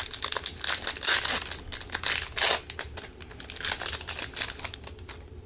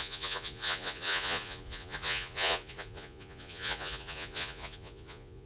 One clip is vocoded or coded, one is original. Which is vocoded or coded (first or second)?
second